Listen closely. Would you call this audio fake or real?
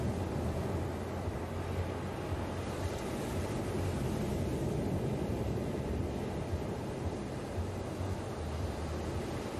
real